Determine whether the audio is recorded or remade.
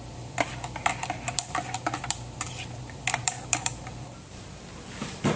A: remade